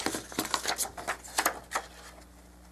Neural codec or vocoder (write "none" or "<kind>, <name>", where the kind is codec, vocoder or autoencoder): none